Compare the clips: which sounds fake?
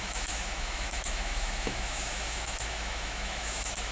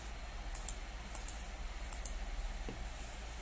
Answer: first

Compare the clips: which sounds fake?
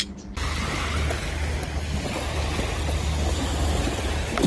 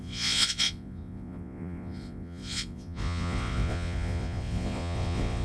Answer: second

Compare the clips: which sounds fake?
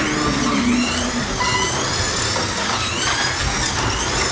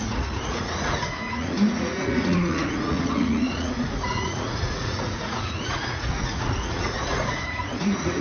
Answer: second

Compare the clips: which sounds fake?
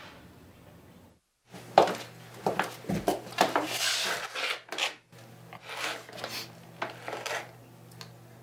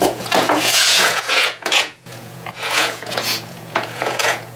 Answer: second